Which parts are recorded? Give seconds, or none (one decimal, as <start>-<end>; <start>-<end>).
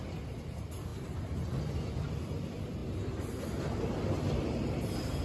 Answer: 0.0-0.9; 1.5-5.2